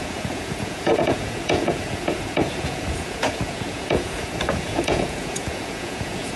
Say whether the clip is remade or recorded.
remade